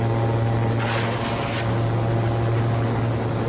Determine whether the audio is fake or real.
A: real